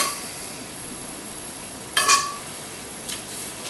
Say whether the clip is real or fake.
fake